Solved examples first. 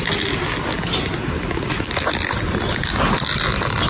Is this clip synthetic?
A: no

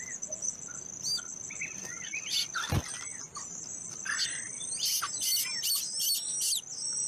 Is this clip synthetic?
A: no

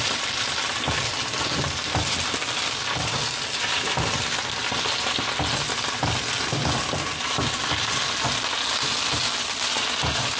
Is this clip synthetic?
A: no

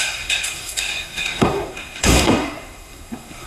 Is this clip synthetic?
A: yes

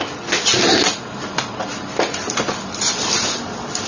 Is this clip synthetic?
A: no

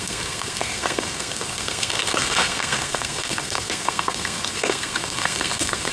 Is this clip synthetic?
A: yes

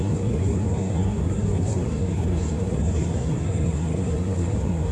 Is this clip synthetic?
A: yes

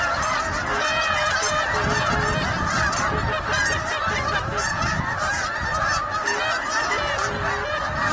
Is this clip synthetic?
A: no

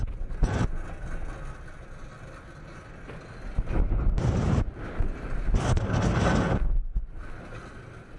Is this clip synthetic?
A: no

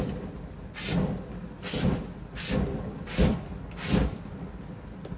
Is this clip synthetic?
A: no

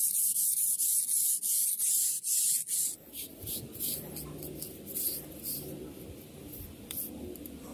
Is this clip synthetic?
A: no